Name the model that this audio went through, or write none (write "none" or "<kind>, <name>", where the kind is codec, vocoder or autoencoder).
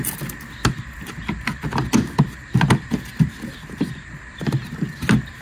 none